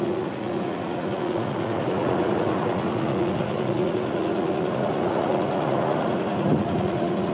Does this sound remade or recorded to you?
remade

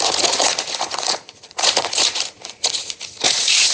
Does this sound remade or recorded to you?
remade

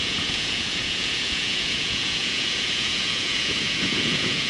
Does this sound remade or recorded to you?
remade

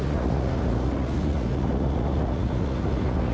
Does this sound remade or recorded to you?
remade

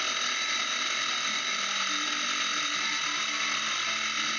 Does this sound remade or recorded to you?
recorded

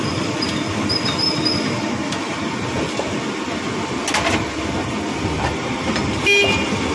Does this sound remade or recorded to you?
recorded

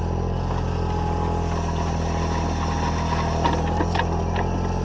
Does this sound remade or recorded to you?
recorded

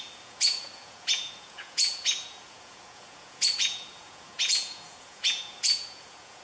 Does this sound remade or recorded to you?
remade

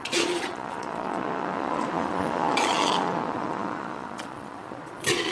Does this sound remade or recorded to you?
remade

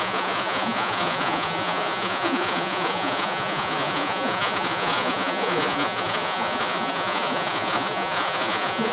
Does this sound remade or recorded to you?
remade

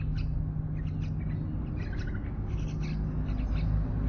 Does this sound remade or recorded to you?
recorded